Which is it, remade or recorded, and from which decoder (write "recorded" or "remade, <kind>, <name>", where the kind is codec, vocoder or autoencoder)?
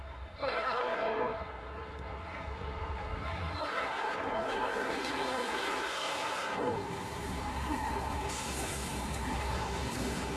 remade, codec, SNAC